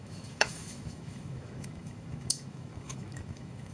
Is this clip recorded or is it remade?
remade